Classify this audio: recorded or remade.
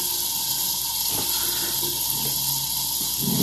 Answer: recorded